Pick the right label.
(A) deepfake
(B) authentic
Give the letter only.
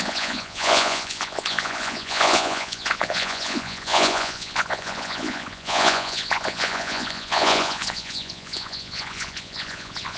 A